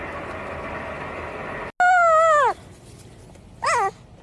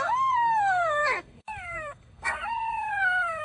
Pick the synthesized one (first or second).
second